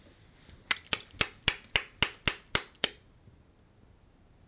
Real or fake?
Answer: real